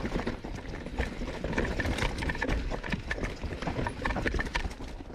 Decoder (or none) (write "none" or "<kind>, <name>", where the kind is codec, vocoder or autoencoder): none